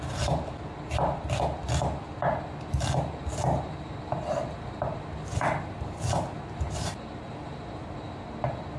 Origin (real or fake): real